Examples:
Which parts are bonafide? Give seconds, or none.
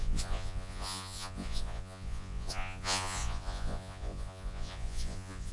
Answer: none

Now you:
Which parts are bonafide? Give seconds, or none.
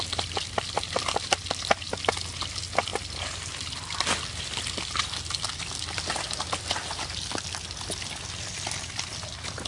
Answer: 0.0-9.7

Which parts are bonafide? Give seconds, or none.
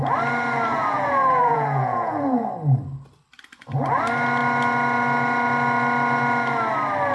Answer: 0.0-0.7; 2.5-7.1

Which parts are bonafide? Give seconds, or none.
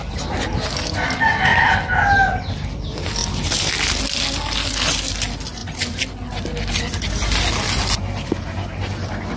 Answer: 0.0-9.4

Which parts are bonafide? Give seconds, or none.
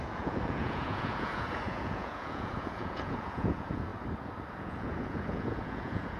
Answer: 3.9-4.5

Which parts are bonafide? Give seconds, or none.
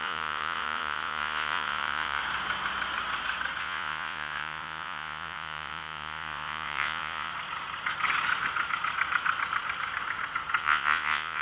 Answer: 2.2-3.6; 7.3-10.6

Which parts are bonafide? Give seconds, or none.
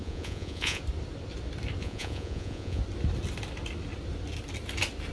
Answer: 0.8-1.8; 2.8-5.1